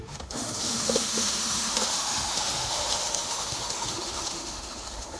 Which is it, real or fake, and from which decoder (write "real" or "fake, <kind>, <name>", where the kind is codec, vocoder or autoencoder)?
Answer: fake, autoencoder, DAC-VAE